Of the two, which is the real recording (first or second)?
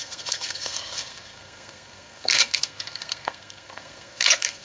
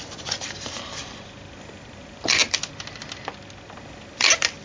second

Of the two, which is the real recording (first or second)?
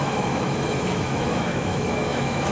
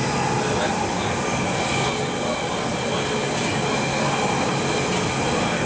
second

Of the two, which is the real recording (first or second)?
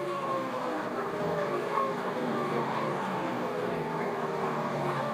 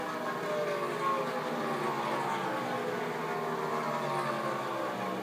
second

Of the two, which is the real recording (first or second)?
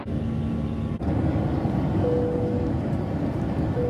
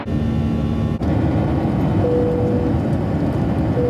second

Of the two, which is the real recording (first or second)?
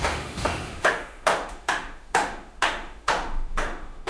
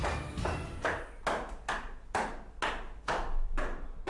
second